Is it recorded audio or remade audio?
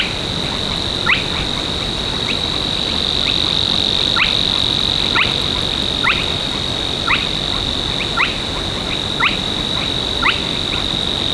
recorded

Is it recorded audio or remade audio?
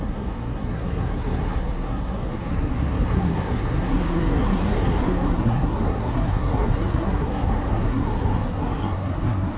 remade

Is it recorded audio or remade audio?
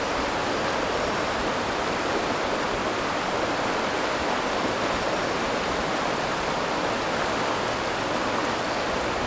recorded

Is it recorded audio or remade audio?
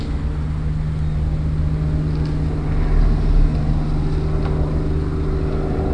recorded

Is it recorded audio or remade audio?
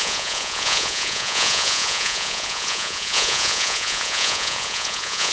remade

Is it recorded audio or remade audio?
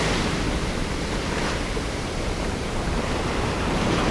remade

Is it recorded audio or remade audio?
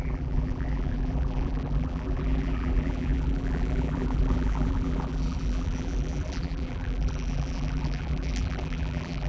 remade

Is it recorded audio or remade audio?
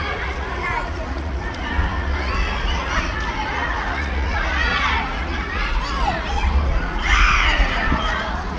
remade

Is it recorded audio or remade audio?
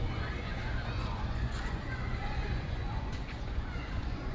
remade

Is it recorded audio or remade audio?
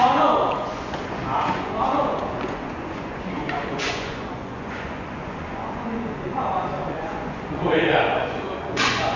remade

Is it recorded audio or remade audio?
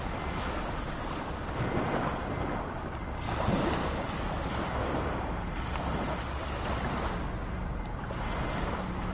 recorded